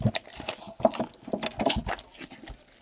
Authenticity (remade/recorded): recorded